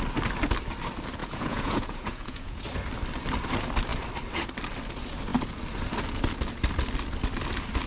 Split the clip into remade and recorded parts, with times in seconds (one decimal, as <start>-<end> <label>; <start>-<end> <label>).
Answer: 0.0-1.2 recorded; 1.2-2.6 remade; 2.6-7.9 recorded